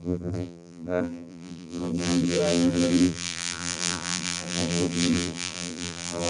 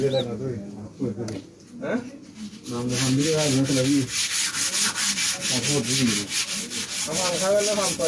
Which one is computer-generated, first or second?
first